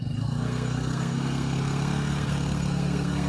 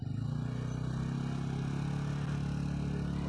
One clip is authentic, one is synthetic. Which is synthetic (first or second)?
first